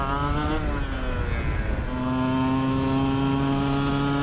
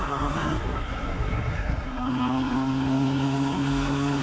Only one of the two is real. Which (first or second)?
first